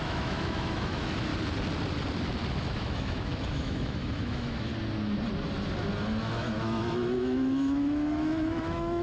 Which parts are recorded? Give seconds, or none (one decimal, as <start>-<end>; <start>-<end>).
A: 1.3-2.5; 4.7-6.2